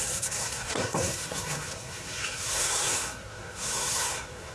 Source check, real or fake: fake